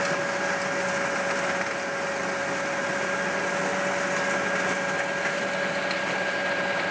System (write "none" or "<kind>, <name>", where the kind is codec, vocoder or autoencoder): none